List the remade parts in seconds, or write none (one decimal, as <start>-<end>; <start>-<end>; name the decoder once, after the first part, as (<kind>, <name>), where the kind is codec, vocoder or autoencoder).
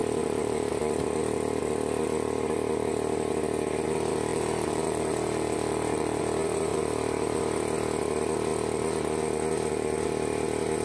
0.0-0.9 (vocoder, BigVGAN v2); 4.3-6.2; 6.7-7.4